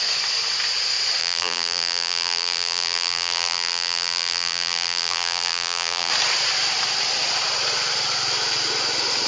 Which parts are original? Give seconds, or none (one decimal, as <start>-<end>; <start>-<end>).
0.0-1.2; 6.1-9.3

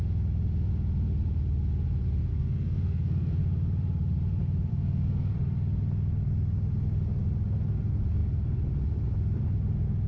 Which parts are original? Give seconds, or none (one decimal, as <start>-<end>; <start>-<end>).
0.0-2.3; 3.4-4.7; 5.4-10.1